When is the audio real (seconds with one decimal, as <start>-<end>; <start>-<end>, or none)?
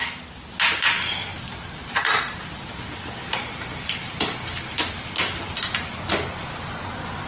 0.0-1.3; 2.2-4.0; 5.7-7.3